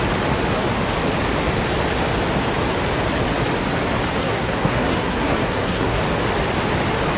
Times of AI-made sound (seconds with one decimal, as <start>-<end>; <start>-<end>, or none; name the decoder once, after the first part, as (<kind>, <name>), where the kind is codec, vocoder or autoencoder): 4.2-6.0 (codec, SNAC)